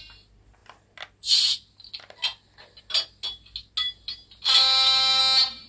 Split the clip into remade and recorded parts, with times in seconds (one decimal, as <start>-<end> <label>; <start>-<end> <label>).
0.0-4.6 recorded; 4.6-5.2 remade; 5.2-5.7 recorded